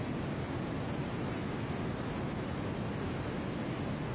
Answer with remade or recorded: recorded